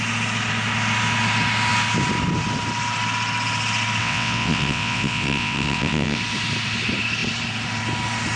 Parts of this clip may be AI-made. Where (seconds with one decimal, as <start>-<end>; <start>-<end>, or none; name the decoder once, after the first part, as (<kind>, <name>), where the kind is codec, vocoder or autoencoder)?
4.0-6.2 (vocoder, WaveNeXt)